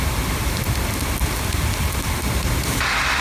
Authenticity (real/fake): real